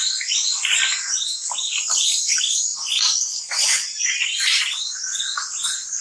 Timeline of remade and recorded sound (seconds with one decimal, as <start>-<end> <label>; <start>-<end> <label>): 0.0-6.0 recorded